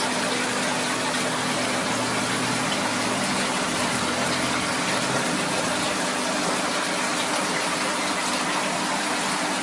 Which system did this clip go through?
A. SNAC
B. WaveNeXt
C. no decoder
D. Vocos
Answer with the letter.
C